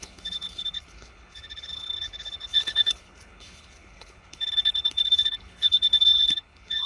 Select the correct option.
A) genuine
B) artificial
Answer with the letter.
B